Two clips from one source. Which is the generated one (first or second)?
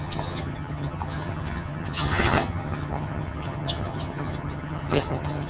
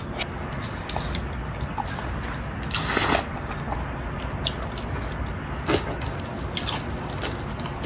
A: first